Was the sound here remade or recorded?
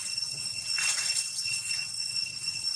remade